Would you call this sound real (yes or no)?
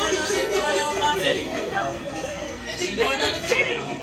no